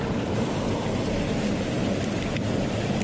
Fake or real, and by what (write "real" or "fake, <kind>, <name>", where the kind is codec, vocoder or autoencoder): real